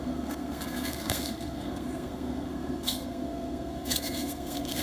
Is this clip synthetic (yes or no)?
yes